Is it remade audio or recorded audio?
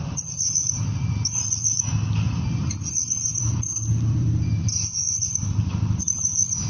remade